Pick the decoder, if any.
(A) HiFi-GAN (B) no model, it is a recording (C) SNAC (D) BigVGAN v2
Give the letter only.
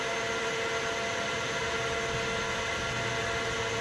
B